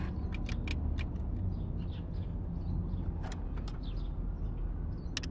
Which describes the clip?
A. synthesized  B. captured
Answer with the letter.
B